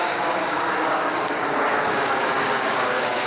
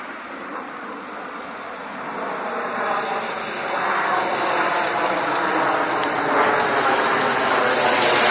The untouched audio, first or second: second